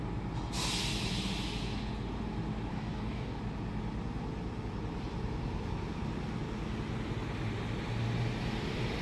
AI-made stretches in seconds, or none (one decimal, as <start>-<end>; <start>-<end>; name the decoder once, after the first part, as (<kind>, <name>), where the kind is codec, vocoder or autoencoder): 2.7-3.4 (codec, DAC)